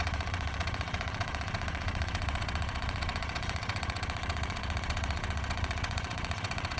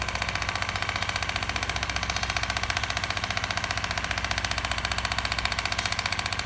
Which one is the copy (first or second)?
first